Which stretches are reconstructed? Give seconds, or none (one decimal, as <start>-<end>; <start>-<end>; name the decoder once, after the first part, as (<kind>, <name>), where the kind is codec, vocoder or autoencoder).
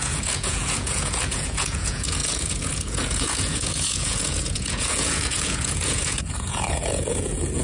0.0-7.6 (vocoder, Vocos)